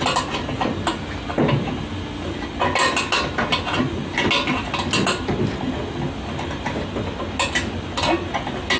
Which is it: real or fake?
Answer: real